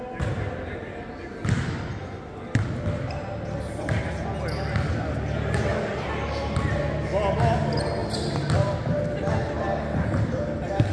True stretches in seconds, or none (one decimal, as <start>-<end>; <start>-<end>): 0.0-8.0; 8.7-10.9